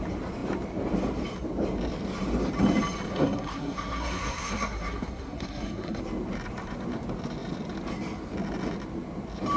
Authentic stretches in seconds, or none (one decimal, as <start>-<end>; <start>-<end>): 0.0-3.1; 6.0-9.6